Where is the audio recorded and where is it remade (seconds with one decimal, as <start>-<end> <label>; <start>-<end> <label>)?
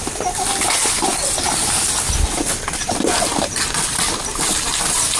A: 0.0-5.2 recorded